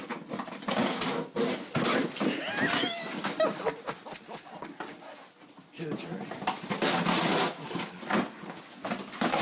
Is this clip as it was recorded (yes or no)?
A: yes